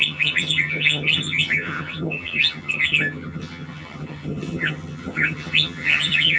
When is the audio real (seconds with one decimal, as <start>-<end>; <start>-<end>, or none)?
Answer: none